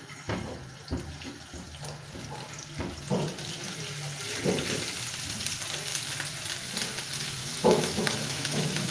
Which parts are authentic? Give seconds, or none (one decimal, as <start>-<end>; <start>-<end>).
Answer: 0.0-7.4